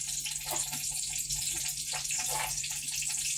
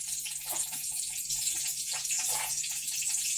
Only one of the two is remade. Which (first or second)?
second